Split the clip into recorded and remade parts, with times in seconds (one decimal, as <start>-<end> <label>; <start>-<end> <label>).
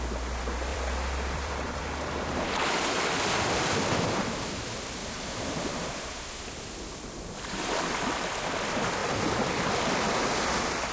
0.0-0.7 recorded; 0.7-1.8 remade; 1.8-5.0 recorded; 5.0-8.4 remade; 8.4-9.0 recorded; 9.0-10.0 remade; 10.0-10.9 recorded